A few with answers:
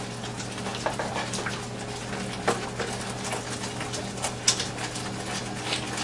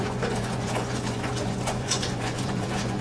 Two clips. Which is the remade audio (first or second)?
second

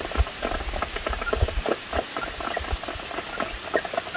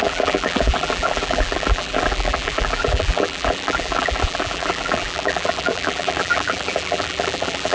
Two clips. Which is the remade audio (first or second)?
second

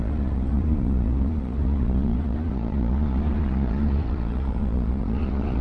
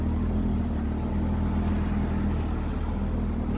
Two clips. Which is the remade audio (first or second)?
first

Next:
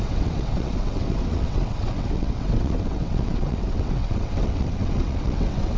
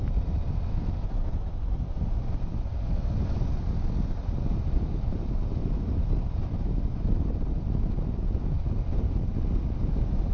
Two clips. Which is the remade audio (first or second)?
first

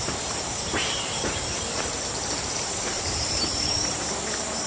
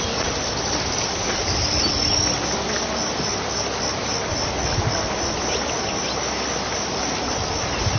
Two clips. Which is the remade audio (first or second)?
first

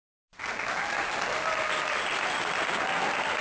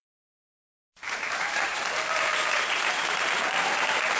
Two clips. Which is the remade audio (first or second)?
second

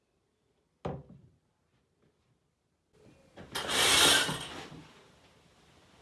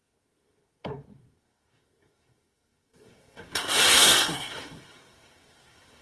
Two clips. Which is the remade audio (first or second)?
second